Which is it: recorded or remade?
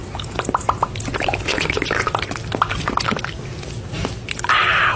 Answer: recorded